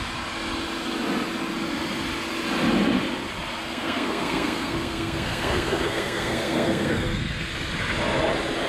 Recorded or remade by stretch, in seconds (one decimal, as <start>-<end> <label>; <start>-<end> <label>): 0.0-3.6 recorded; 3.6-7.5 remade; 7.5-8.7 recorded